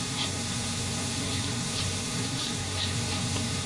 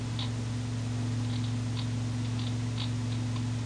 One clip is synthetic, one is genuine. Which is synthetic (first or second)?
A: first